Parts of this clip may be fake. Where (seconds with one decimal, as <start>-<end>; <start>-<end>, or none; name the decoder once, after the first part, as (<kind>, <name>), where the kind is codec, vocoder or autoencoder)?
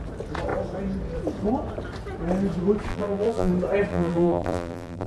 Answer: 2.9-3.5 (vocoder, BigVGAN v2); 3.9-5.1